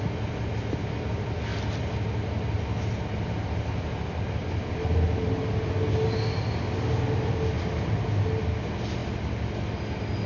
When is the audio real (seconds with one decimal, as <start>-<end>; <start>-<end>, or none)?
0.0-10.3